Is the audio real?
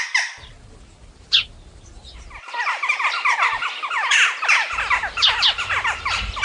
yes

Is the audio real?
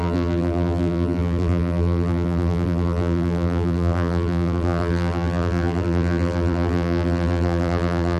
no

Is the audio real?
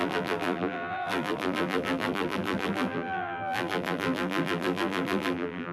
no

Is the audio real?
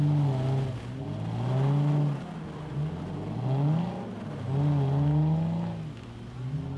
yes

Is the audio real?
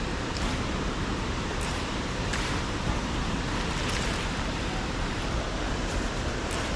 no